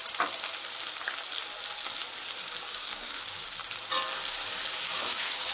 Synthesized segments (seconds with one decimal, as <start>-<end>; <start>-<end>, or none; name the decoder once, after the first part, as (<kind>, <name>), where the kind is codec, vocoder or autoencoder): 2.6-3.6 (codec, DAC); 4.9-5.5